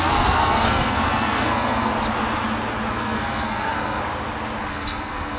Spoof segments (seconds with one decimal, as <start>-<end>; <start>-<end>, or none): 0.0-1.9; 2.9-4.0; 4.7-5.4